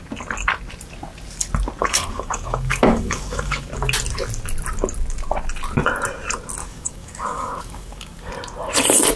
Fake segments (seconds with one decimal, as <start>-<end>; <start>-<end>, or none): 1.8-3.7; 6.6-8.3